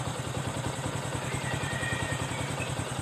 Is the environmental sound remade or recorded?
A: remade